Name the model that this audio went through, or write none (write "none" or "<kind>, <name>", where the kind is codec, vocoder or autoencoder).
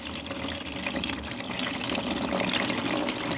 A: none